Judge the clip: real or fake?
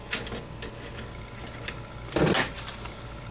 real